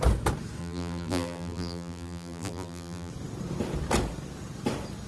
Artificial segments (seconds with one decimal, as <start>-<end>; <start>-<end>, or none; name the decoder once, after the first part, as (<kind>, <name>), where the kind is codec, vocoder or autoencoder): 0.6-3.1 (vocoder, BigVGAN v2)